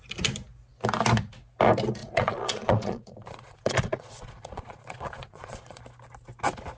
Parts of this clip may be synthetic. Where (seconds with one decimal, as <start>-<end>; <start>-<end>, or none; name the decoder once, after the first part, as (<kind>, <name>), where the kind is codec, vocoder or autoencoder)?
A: 2.0-5.8 (vocoder, Vocos)